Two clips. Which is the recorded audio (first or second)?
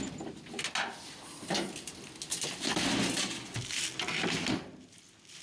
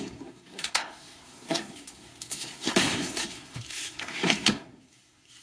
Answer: first